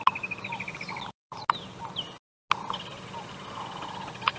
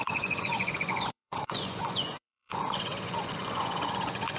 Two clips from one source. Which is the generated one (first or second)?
second